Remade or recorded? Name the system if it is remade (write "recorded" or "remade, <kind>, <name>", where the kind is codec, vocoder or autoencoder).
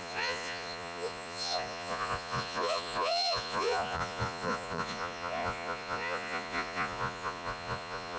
remade, vocoder, Vocos